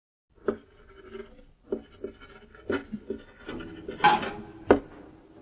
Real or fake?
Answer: real